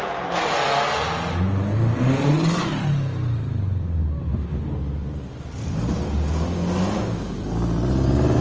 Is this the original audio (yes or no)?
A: yes